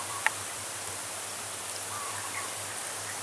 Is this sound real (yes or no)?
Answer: no